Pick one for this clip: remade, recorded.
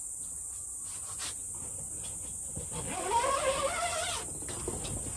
recorded